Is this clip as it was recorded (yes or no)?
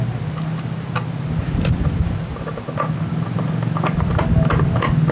yes